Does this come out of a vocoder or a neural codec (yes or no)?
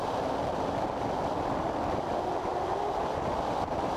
no